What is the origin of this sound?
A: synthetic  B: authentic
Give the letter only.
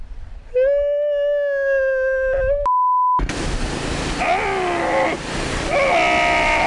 B